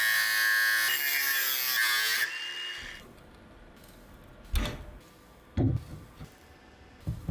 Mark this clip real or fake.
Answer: real